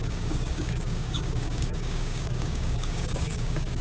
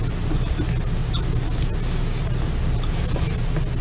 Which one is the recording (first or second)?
second